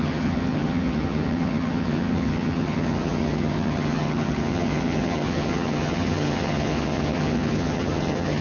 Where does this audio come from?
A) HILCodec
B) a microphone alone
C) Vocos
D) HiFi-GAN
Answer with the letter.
D